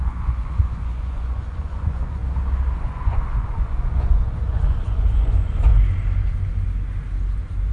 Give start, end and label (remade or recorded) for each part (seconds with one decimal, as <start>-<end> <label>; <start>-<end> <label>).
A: 0.0-2.2 remade; 2.2-2.8 recorded; 2.8-5.7 remade; 5.7-7.7 recorded